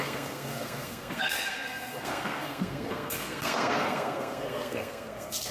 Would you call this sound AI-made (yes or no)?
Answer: yes